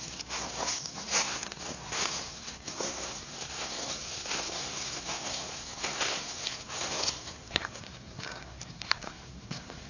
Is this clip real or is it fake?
fake